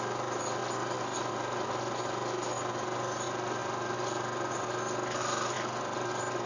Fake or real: real